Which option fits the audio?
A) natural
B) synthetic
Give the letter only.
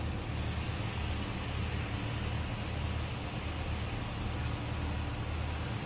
A